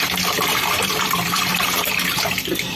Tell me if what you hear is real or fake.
fake